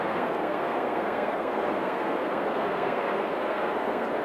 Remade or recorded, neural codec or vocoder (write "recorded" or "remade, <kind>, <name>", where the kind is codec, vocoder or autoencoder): remade, codec, SNAC